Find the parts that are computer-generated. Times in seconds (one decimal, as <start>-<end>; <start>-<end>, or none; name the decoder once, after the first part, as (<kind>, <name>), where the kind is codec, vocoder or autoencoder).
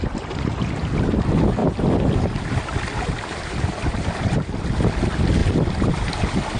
1.6-2.3 (vocoder, BigVGAN v2); 5.4-6.1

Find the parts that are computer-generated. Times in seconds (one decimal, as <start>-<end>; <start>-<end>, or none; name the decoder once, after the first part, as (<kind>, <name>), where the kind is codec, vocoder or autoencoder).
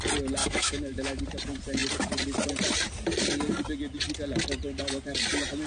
0.4-1.2 (autoencoder, DAC-VAE)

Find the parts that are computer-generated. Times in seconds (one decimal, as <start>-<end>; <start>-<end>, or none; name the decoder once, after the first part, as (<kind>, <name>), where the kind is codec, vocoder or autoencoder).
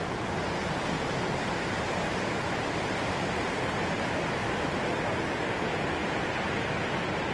0.4-3.1 (vocoder, BigVGAN v2)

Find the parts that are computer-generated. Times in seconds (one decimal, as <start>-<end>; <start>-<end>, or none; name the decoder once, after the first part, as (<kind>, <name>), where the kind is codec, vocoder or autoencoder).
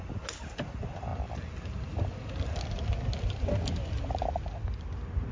none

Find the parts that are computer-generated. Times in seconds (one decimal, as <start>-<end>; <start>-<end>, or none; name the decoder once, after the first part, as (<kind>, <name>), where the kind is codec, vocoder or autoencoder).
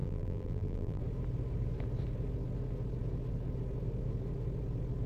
0.0-1.0 (vocoder, BigVGAN v2)